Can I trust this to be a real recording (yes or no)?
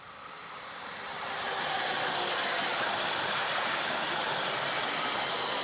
yes